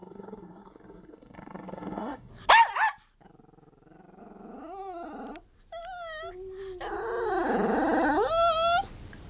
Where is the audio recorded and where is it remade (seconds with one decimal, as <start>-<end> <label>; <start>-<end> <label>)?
0.0-2.3 remade; 2.3-9.3 recorded

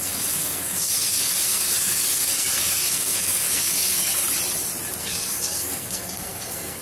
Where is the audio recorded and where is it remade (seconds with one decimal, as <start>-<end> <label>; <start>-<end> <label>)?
0.0-4.2 remade; 4.2-5.0 recorded; 5.0-6.8 remade